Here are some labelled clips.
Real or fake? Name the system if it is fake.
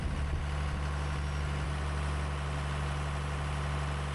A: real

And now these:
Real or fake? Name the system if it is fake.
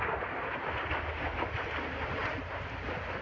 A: real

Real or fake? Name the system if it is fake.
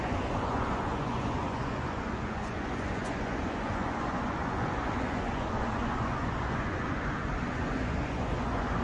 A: fake, vocoder, Vocos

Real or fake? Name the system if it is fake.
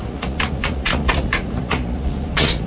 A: fake, vocoder, Vocos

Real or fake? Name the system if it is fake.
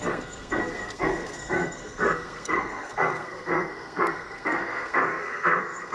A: fake, codec, SNAC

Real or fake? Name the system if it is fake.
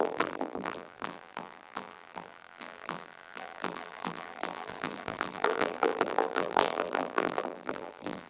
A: fake, vocoder, BigVGAN v2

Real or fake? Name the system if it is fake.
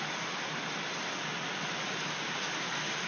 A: real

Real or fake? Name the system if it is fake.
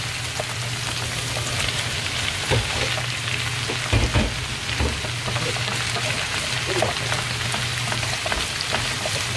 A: real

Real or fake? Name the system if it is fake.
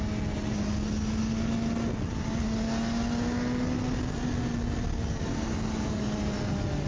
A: real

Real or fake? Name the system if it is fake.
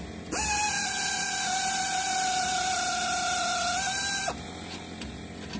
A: real